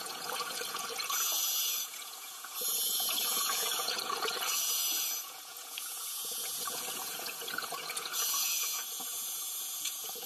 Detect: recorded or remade remade